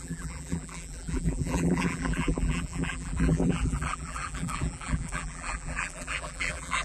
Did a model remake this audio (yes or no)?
yes